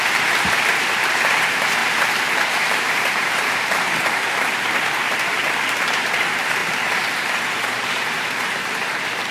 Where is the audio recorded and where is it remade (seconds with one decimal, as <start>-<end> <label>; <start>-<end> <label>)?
0.0-9.3 remade